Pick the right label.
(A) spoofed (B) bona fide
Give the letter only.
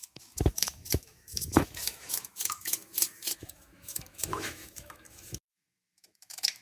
A